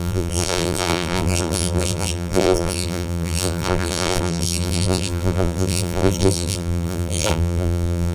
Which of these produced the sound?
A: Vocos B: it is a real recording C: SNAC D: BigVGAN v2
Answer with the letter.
D